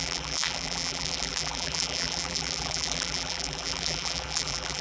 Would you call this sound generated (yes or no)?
yes